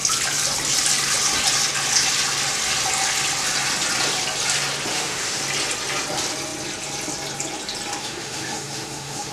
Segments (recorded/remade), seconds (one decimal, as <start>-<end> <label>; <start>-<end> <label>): 0.0-4.9 recorded; 4.9-5.4 remade; 5.4-8.0 recorded; 8.0-9.3 remade